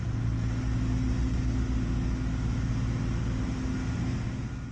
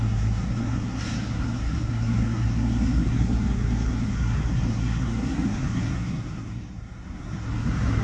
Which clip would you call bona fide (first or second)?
first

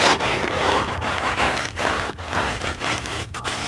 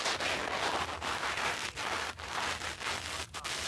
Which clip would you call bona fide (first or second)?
second